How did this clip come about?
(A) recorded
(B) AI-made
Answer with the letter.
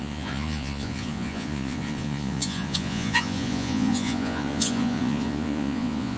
B